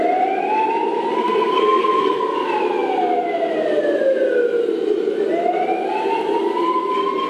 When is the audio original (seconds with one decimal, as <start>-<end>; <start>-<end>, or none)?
0.0-1.2; 2.2-7.3

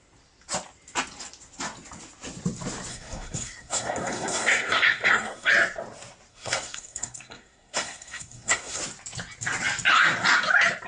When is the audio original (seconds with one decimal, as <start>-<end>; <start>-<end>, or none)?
0.0-2.9; 5.5-6.3; 8.8-10.9

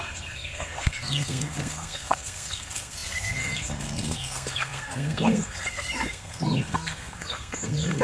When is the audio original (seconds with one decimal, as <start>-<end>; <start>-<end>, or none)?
none

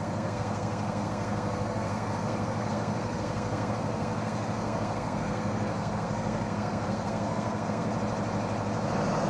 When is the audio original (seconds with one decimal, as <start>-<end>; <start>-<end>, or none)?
7.9-9.3